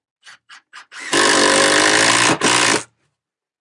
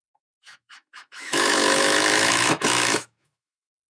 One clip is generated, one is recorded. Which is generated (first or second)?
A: second